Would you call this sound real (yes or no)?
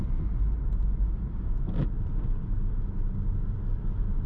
yes